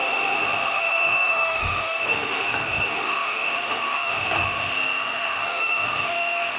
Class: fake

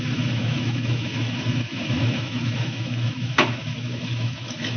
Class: fake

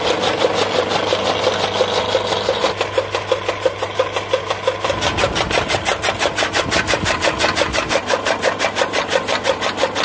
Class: real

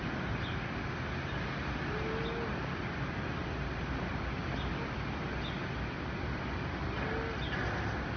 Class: real